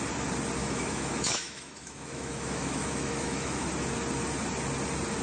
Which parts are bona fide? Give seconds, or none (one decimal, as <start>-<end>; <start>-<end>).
0.0-0.6; 3.7-5.2